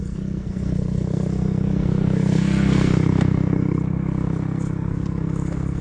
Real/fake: fake